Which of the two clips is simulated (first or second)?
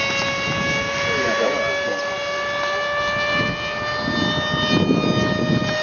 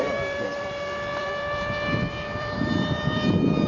second